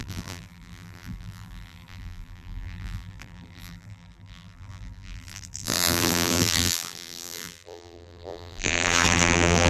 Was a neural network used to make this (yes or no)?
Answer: yes